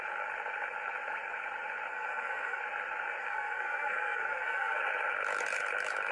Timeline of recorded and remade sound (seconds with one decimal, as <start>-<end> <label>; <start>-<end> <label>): 0.0-1.9 recorded; 1.9-2.6 remade; 2.6-3.2 recorded; 3.2-4.8 remade; 4.8-6.1 recorded